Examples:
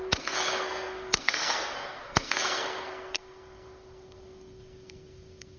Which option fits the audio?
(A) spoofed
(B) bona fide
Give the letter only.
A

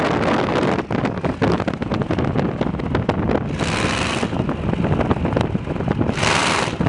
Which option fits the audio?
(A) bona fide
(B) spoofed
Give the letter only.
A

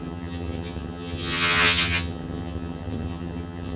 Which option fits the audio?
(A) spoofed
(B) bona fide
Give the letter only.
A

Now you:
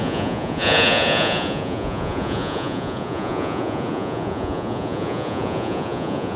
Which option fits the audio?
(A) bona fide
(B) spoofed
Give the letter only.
B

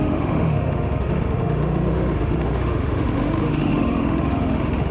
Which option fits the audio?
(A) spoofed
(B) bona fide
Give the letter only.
A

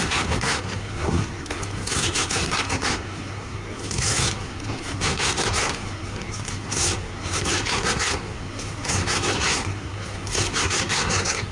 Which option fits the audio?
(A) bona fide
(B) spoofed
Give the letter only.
B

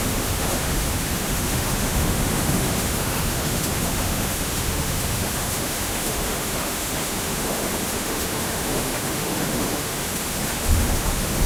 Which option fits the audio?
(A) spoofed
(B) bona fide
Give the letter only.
A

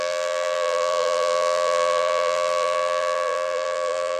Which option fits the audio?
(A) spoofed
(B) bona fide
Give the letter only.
A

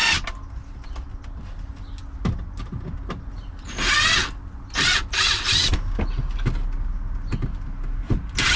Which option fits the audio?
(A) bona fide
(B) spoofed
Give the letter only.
A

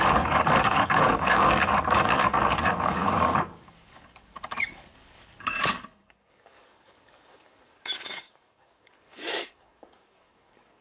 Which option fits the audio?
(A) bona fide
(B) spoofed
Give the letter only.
B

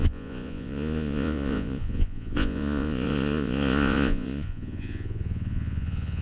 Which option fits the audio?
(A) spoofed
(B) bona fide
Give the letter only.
A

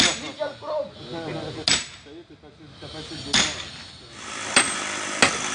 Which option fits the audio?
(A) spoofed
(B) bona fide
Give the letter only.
B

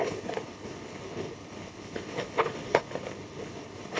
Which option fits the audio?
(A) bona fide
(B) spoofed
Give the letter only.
B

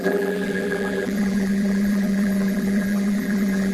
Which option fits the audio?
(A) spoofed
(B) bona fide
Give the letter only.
A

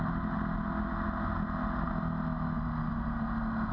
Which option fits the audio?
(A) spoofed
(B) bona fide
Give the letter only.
B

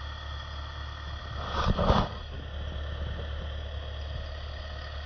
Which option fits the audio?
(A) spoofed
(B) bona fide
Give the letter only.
B